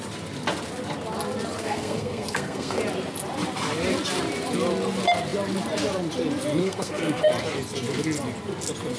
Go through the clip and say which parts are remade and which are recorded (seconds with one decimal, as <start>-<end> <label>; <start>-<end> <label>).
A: 0.0-1.6 recorded; 1.6-2.8 remade; 2.8-6.6 recorded; 6.6-7.2 remade; 7.2-9.0 recorded